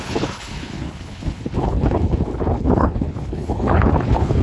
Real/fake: fake